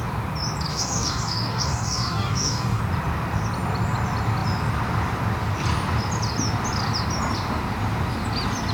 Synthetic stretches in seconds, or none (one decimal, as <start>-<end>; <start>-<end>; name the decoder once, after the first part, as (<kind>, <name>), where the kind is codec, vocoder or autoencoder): 0.7-2.8 (codec, DAC)